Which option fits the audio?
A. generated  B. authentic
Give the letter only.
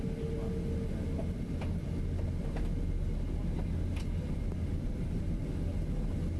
B